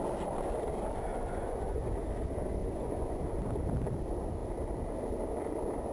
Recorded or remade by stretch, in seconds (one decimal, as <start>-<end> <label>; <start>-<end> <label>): 0.0-1.1 recorded; 1.1-1.9 remade; 1.9-2.6 recorded; 2.6-3.2 remade; 3.2-5.9 recorded